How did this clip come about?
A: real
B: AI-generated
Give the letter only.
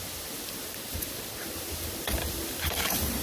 B